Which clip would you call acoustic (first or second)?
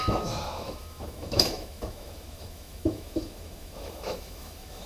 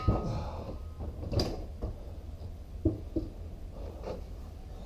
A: second